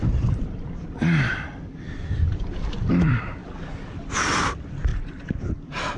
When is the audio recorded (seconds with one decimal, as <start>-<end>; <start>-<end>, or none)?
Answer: 3.4-4.2